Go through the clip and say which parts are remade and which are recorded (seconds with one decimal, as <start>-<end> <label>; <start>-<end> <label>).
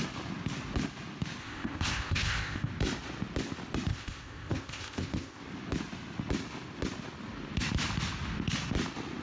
0.0-1.4 recorded; 1.4-2.7 remade; 2.7-3.9 recorded; 3.9-5.4 remade; 5.4-9.2 recorded